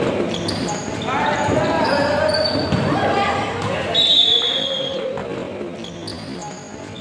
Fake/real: real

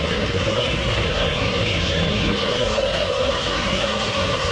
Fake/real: fake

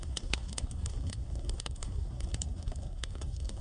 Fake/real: fake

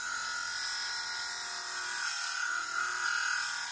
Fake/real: real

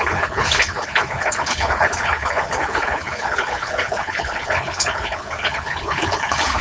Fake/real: fake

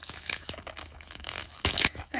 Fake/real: fake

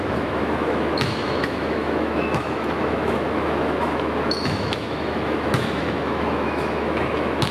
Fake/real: fake